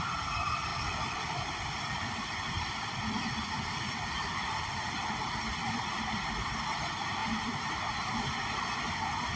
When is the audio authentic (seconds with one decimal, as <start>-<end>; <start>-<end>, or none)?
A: 0.0-0.7; 5.8-7.2; 8.1-9.4